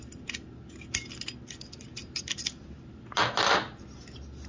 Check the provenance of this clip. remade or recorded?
recorded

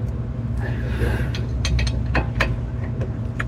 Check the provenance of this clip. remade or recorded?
recorded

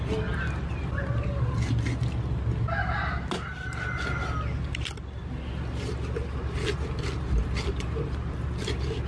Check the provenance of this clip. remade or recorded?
recorded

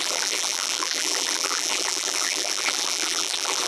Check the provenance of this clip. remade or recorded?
remade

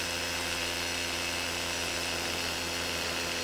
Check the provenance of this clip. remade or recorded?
recorded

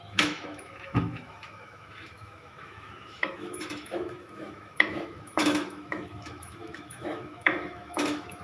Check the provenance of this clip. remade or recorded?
remade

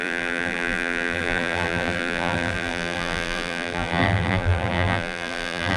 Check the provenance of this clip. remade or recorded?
remade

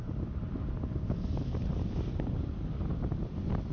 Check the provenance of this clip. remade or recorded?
recorded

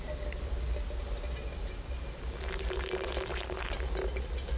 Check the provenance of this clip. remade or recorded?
recorded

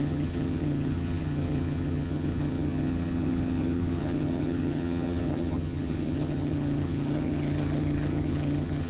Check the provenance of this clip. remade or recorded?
remade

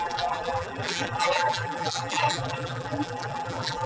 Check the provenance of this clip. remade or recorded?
remade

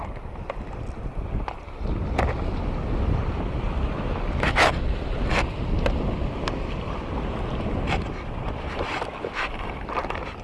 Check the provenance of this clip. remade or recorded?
recorded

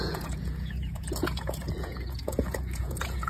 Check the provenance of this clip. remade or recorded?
remade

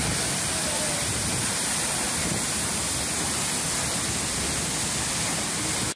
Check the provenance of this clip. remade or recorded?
recorded